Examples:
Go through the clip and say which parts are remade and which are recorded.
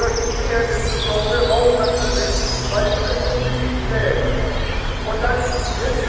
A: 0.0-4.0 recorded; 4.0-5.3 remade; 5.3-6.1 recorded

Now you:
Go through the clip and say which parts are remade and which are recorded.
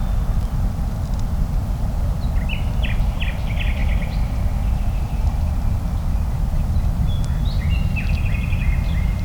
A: 0.0-9.2 recorded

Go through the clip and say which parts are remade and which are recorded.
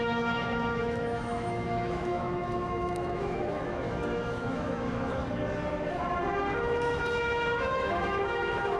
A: 0.0-5.2 remade; 5.2-6.5 recorded; 6.5-8.8 remade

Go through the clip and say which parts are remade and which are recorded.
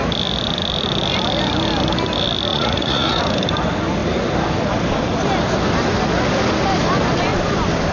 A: 0.0-2.5 recorded; 2.5-3.2 remade; 3.2-7.9 recorded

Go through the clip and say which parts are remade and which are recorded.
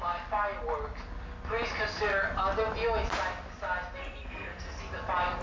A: 0.0-4.0 recorded; 4.0-4.8 remade; 4.8-5.4 recorded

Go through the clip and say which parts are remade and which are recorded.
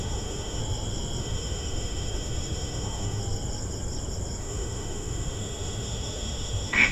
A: 0.0-0.6 remade; 0.6-1.2 recorded; 1.2-3.2 remade; 3.2-4.4 recorded; 4.4-6.9 remade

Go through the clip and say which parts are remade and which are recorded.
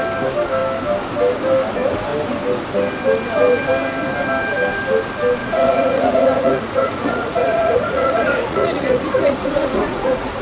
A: 0.0-5.4 recorded; 5.4-10.4 remade